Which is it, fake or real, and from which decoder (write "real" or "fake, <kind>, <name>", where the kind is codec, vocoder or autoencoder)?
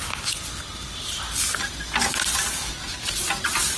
real